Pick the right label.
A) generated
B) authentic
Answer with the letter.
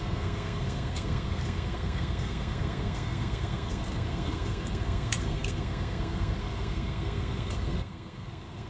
A